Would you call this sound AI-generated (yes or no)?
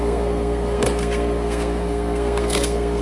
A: yes